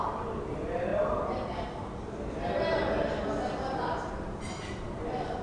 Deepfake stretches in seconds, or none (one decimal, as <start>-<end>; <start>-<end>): 0.0-0.9; 4.1-5.4

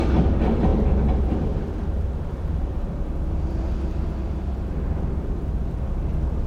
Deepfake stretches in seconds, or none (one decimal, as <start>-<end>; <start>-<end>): none

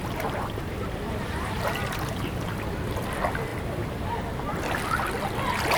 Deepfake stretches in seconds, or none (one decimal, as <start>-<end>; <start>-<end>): 0.0-3.0; 3.5-4.2

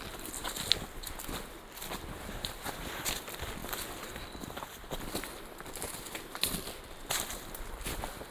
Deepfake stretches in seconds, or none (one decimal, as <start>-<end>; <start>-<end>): 0.0-3.6; 5.4-8.3

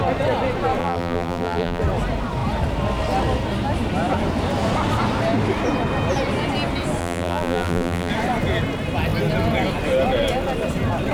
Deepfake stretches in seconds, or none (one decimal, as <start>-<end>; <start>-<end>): 0.8-1.8; 7.0-8.1